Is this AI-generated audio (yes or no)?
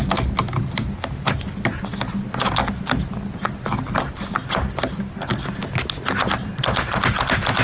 no